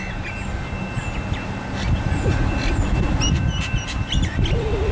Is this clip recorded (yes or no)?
yes